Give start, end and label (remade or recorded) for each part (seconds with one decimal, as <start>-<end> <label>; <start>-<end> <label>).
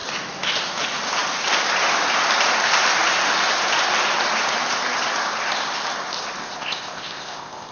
0.0-6.4 recorded; 6.4-7.7 remade